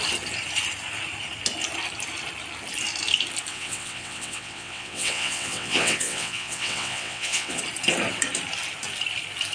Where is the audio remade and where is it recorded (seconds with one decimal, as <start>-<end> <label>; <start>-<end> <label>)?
0.0-3.5 recorded; 3.5-7.6 remade; 7.6-9.5 recorded